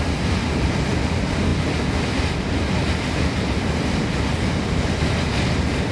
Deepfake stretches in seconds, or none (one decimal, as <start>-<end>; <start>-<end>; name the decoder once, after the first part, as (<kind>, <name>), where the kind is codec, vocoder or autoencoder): none